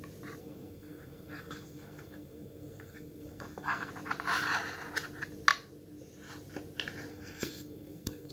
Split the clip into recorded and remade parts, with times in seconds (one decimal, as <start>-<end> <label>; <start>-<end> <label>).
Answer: 0.0-0.4 recorded; 0.4-3.9 remade; 3.9-7.1 recorded; 7.1-8.3 remade